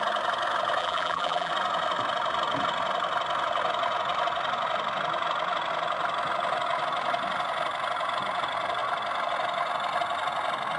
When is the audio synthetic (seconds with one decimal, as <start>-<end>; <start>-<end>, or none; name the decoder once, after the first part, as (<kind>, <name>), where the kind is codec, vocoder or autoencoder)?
0.8-1.5 (vocoder, BigVGAN v2)